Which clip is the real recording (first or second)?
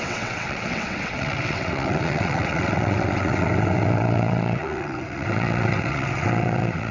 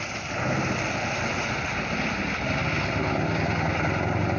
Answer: second